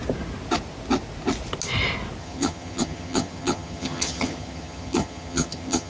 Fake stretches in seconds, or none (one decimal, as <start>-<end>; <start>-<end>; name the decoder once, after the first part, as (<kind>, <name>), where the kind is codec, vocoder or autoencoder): 2.2-5.9 (vocoder, HiFi-GAN)